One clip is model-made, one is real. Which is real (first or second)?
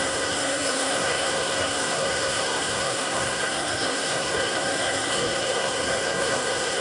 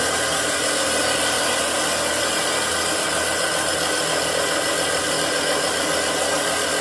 second